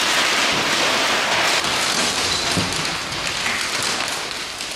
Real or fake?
real